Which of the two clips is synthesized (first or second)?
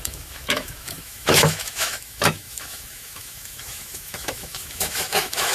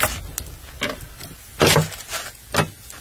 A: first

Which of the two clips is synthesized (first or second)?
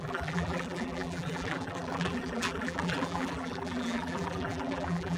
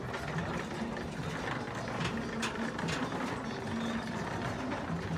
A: first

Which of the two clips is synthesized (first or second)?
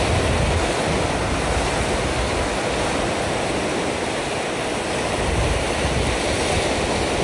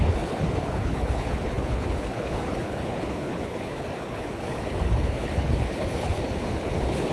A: second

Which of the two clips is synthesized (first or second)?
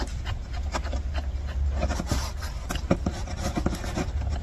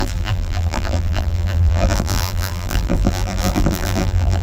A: second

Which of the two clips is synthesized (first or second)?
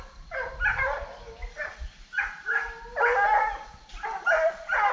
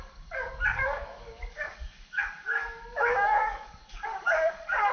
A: second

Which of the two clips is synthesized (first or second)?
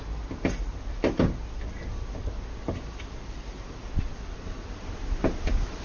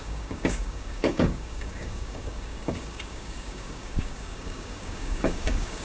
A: second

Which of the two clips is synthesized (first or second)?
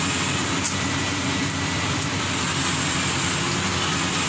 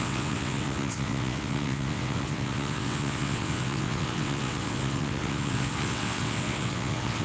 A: second